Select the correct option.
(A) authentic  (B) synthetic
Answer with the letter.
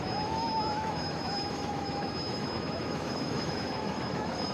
B